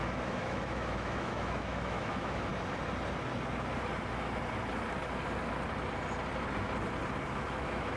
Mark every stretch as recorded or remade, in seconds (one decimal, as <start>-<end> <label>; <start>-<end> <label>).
0.0-2.5 remade; 2.5-7.3 recorded; 7.3-8.0 remade